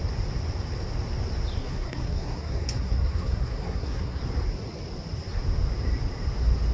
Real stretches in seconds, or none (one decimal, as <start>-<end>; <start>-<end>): 0.0-1.6; 4.2-6.7